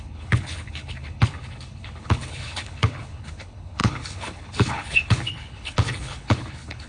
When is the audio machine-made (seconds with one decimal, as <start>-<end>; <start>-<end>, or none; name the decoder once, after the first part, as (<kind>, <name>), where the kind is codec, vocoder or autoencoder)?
0.0-6.9 (codec, HILCodec)